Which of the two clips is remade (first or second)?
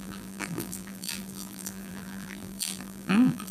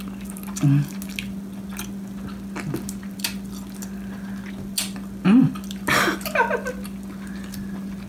first